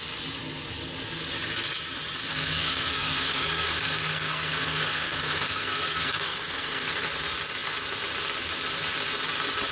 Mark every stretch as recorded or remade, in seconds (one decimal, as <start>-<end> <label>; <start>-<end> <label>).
0.0-2.2 recorded; 2.2-7.1 remade; 7.1-9.7 recorded